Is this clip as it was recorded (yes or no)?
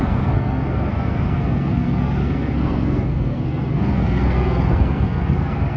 no